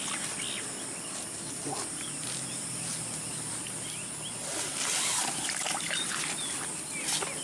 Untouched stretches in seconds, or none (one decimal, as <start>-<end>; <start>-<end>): 0.0-5.2; 6.2-7.4